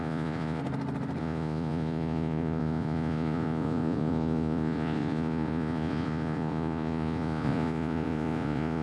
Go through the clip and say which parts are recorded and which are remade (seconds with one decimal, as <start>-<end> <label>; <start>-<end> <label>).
0.0-0.6 remade; 0.6-1.2 recorded; 1.2-8.8 remade